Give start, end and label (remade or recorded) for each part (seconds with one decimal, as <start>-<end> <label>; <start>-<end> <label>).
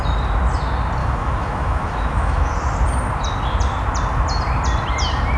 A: 0.0-1.0 recorded; 1.0-2.5 remade; 2.5-5.4 recorded